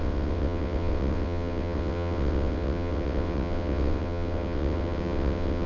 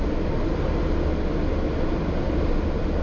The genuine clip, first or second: second